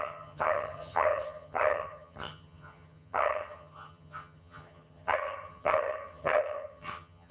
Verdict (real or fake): fake